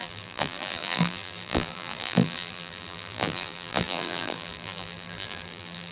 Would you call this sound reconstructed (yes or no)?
yes